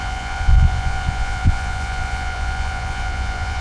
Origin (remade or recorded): remade